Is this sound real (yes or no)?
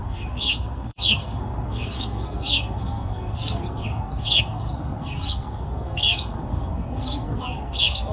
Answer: no